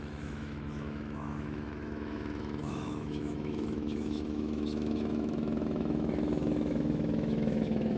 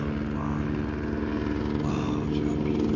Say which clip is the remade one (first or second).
first